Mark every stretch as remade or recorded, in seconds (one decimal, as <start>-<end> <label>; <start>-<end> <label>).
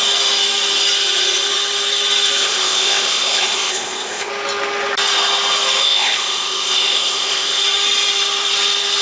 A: 0.0-2.4 recorded; 2.4-4.3 remade; 4.3-5.8 recorded; 5.8-7.6 remade; 7.6-9.0 recorded